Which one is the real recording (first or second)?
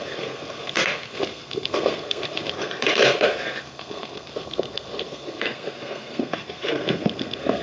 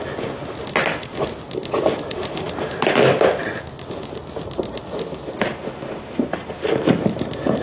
second